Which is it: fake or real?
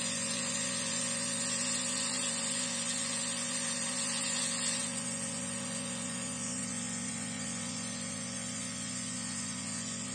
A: fake